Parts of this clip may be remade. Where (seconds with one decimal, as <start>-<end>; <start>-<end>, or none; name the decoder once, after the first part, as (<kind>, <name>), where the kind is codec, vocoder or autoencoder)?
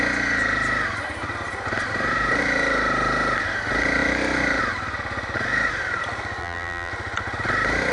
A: 6.4-6.9 (vocoder, BigVGAN v2)